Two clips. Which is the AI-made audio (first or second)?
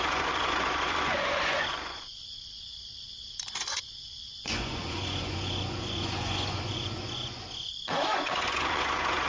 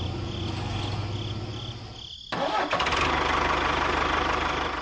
first